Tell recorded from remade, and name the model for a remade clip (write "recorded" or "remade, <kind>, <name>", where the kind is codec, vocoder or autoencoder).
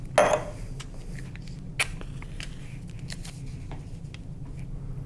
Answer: recorded